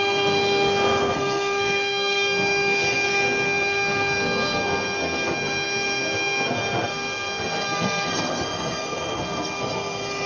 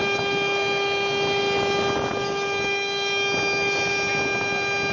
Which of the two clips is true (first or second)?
second